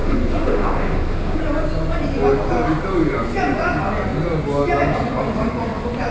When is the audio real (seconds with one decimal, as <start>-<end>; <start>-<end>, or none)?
1.4-6.1